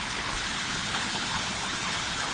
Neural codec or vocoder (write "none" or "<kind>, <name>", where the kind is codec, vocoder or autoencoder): codec, HILCodec